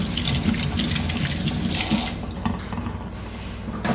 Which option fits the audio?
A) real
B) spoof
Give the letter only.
A